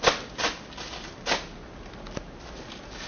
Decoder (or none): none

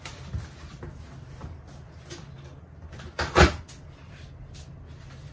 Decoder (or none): none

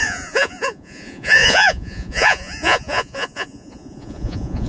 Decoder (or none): vocoder, Vocos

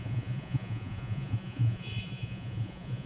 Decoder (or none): vocoder, Vocos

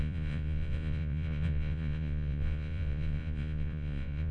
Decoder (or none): vocoder, Vocos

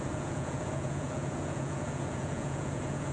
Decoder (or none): vocoder, Vocos